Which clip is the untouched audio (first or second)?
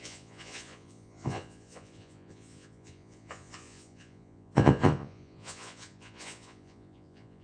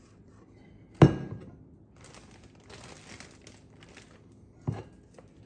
second